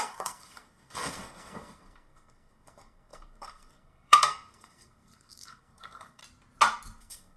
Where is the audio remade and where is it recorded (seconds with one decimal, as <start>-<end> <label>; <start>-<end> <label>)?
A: 0.0-6.2 remade; 6.2-7.0 recorded; 7.0-7.4 remade